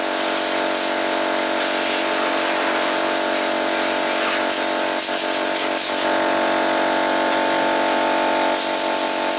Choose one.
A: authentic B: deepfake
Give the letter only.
A